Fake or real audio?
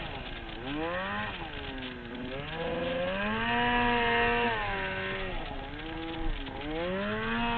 real